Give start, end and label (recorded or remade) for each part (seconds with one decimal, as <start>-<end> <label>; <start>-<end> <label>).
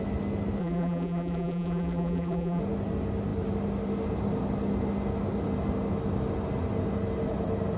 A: 0.0-0.6 recorded; 0.6-2.6 remade; 2.6-7.8 recorded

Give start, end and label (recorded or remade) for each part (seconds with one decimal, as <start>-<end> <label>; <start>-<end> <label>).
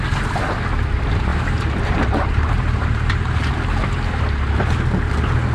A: 0.0-1.3 recorded; 1.3-3.5 remade; 3.5-5.5 recorded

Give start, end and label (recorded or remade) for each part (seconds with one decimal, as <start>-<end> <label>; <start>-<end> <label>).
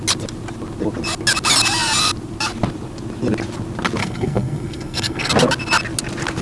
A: 0.0-4.0 recorded; 4.0-5.3 remade; 5.3-6.4 recorded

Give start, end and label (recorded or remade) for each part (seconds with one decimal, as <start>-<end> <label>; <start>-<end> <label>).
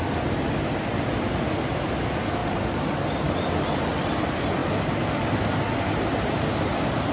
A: 0.0-7.1 recorded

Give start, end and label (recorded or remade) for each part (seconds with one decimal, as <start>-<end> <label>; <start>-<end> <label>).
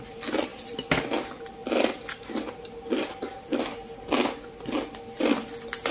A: 0.0-5.9 recorded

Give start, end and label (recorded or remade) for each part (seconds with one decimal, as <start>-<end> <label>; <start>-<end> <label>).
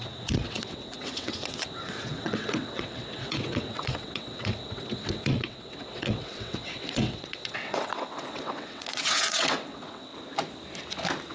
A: 0.0-10.1 remade; 10.1-11.3 recorded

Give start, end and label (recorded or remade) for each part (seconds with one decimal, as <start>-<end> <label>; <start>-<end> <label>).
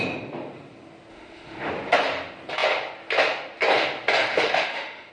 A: 0.0-1.1 recorded; 1.1-1.7 remade; 1.7-4.3 recorded; 4.3-5.1 remade